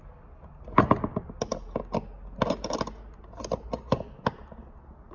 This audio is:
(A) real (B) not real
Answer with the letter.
A